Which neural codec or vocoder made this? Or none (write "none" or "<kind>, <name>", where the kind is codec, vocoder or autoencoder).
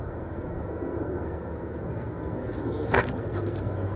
codec, SNAC